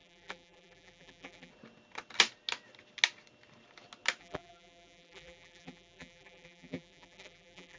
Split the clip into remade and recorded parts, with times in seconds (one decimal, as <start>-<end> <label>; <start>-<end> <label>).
0.0-1.5 remade; 1.5-4.2 recorded; 4.2-7.8 remade